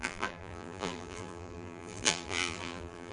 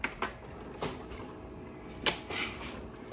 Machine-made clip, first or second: first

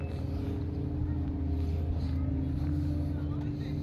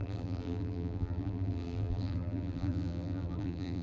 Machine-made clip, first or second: second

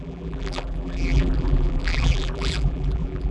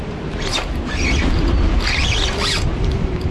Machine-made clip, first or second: first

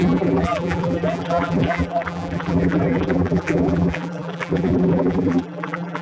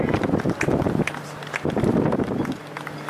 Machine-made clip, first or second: first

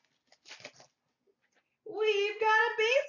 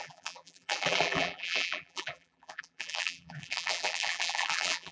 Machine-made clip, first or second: second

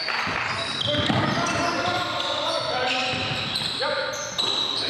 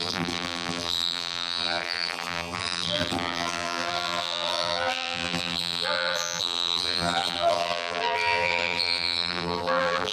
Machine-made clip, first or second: second